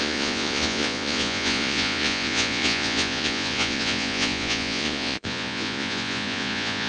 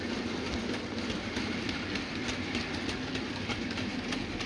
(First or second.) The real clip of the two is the second